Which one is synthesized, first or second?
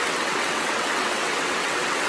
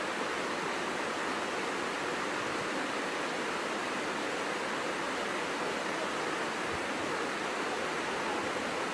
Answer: first